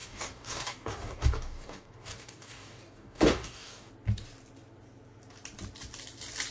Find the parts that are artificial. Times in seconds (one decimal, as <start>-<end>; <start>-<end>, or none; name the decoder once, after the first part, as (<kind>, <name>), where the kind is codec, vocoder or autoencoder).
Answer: 0.0-3.9 (codec, DAC)